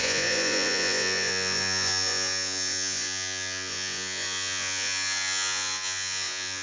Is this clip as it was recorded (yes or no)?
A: no